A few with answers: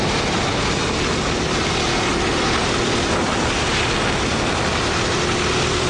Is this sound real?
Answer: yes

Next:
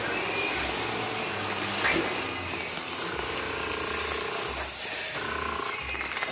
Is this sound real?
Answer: yes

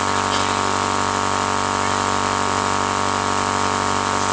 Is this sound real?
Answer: yes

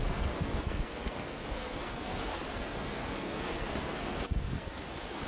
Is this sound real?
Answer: no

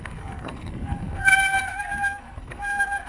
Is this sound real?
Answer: no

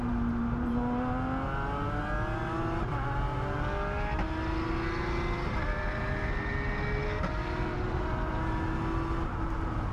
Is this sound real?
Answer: yes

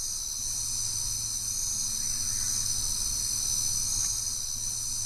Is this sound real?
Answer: yes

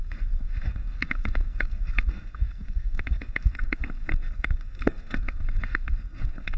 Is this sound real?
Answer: no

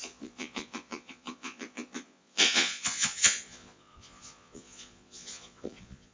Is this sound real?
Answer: no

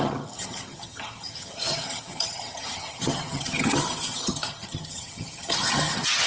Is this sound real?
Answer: no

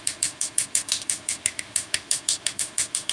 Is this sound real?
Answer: no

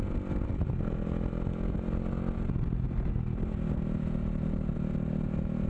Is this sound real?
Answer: yes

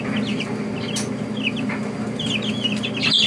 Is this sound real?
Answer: yes